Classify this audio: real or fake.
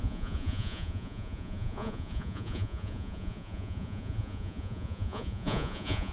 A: fake